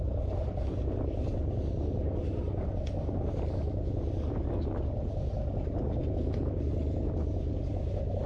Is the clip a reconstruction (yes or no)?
no